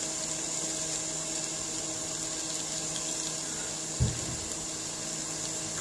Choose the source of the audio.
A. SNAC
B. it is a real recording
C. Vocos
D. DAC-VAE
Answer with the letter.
B